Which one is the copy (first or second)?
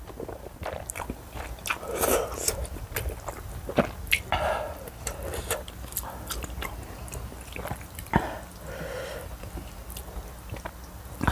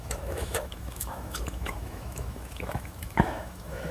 second